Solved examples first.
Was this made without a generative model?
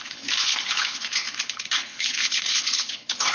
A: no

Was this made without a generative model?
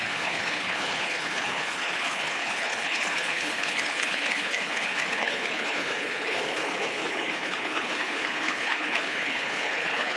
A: no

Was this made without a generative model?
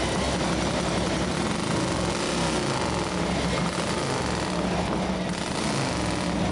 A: yes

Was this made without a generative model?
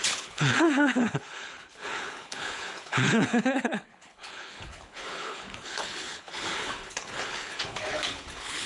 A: no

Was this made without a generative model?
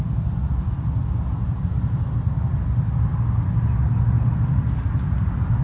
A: yes